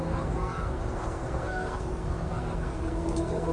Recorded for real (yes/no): no